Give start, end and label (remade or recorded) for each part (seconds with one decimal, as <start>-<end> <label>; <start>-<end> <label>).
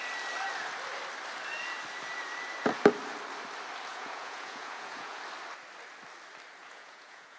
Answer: 0.0-3.9 recorded; 3.9-5.2 remade; 5.2-6.6 recorded; 6.6-7.4 remade